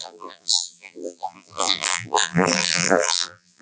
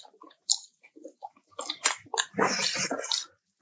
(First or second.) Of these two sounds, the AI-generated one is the first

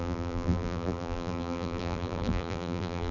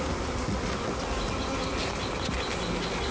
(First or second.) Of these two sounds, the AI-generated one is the first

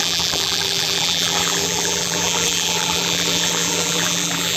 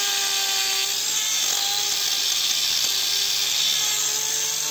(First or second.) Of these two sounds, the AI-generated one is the first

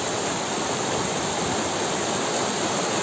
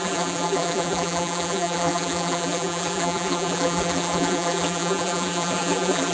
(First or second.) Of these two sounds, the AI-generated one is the second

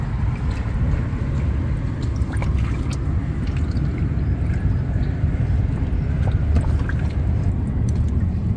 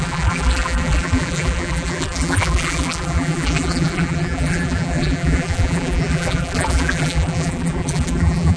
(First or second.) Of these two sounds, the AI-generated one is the second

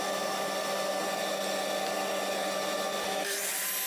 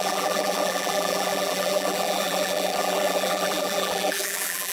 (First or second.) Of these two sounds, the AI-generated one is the second